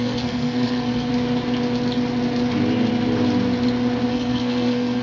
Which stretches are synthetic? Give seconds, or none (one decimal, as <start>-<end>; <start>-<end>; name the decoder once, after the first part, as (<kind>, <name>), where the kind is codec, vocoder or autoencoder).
0.0-1.1 (codec, SNAC); 4.1-5.0